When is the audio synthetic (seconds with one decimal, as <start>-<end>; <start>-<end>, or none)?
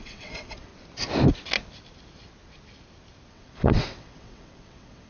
0.0-0.7; 3.3-5.1